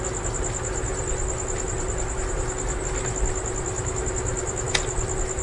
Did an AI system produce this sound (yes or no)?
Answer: no